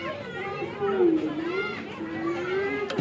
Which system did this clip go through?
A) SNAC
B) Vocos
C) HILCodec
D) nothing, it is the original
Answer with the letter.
D